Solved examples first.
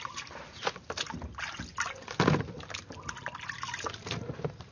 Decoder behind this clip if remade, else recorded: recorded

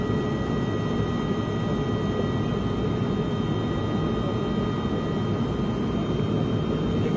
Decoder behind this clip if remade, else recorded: recorded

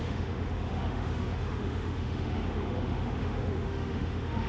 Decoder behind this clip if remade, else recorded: remade, autoencoder, DAC-VAE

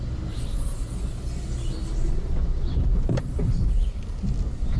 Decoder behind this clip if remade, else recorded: recorded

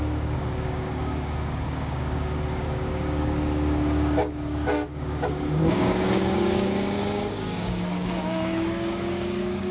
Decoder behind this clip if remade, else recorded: remade, codec, DAC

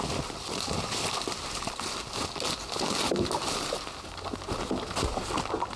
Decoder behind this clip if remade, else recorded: recorded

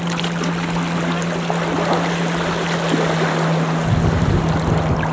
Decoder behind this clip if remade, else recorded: recorded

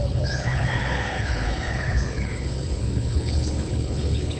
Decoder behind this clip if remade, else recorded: remade, codec, HILCodec